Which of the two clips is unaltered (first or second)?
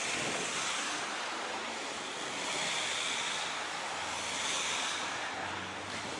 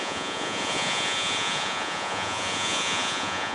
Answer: first